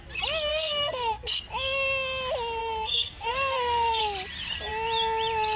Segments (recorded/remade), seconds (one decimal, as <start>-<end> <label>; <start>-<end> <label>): 0.0-0.5 recorded; 0.5-1.4 remade; 1.4-2.6 recorded; 2.6-4.0 remade; 4.0-5.6 recorded